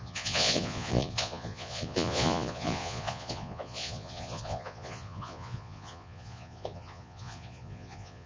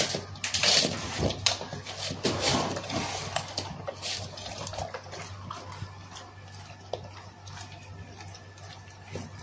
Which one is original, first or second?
second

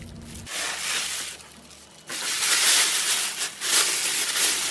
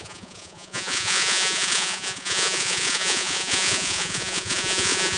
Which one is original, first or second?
first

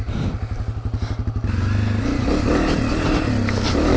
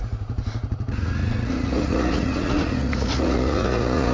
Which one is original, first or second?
first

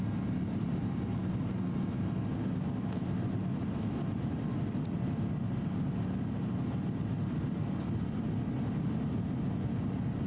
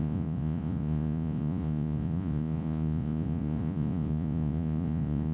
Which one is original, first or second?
first